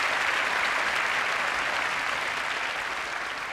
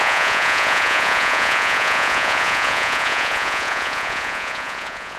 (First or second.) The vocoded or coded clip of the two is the second